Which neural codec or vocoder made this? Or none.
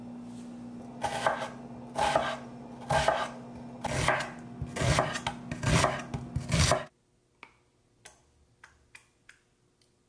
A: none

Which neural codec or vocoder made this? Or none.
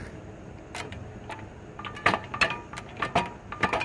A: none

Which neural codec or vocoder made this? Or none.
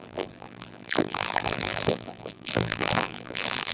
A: vocoder, BigVGAN v2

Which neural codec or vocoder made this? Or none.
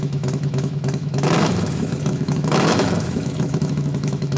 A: autoencoder, DAC-VAE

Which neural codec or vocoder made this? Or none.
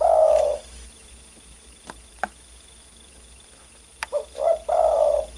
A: autoencoder, DAC-VAE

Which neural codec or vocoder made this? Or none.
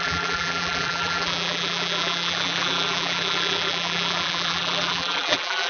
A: vocoder, BigVGAN v2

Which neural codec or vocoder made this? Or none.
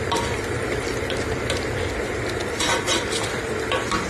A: vocoder, BigVGAN v2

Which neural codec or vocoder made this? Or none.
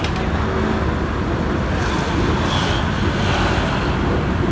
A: none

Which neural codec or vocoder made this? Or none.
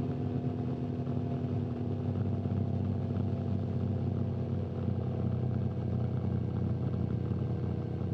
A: none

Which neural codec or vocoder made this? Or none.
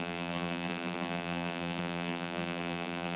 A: vocoder, BigVGAN v2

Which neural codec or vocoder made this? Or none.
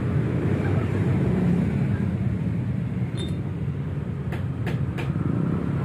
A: none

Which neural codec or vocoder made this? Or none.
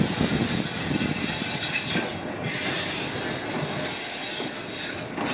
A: none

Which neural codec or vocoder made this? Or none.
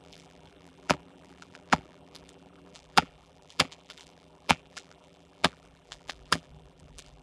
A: vocoder, BigVGAN v2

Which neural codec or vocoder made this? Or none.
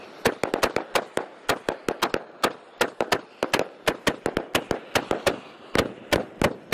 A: none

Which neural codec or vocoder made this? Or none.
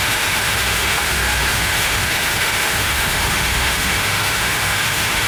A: autoencoder, DAC-VAE